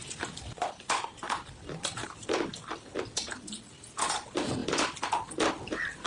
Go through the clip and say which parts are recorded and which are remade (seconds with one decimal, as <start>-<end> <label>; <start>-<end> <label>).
0.0-2.5 remade; 2.5-3.7 recorded; 3.7-4.6 remade; 4.6-5.5 recorded; 5.5-6.1 remade